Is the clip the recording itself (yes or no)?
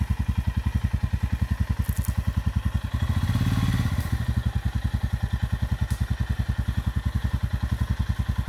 yes